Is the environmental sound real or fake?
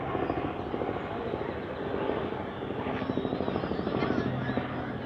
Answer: real